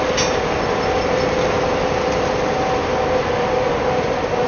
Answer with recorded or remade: recorded